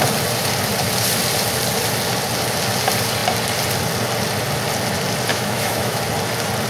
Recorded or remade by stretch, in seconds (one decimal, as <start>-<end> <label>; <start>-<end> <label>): 0.0-5.3 recorded; 5.3-6.0 remade; 6.0-6.7 recorded